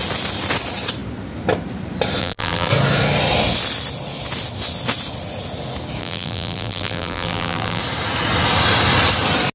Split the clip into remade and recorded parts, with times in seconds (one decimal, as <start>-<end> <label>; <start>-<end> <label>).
0.0-2.2 recorded; 2.2-2.7 remade; 2.7-6.0 recorded; 6.0-7.8 remade; 7.8-9.5 recorded